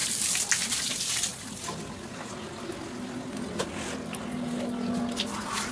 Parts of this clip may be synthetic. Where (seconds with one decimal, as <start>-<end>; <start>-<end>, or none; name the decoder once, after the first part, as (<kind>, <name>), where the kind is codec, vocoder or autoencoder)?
none